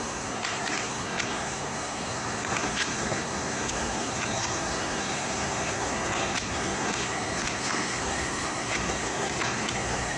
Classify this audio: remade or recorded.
remade